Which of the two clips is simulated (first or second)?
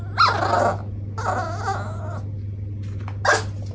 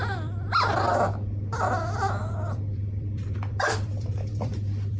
second